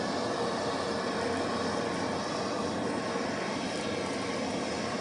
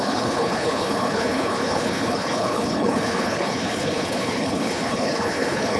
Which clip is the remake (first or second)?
second